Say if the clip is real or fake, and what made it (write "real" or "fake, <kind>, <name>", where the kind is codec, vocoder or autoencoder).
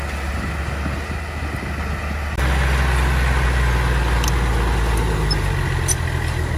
real